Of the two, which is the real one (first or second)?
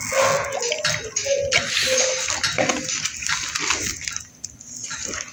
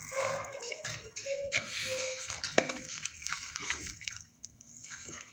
first